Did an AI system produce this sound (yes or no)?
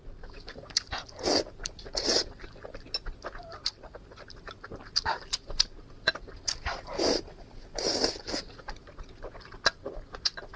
no